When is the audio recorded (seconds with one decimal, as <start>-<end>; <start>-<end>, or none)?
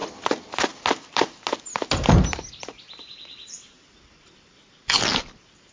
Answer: 0.0-5.7